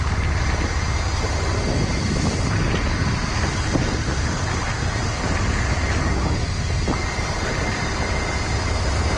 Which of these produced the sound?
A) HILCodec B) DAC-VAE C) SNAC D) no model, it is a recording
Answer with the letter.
D